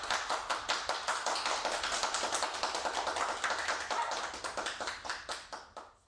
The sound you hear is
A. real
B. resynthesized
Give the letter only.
A